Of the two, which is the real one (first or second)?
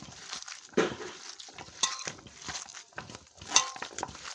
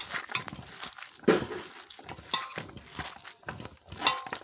second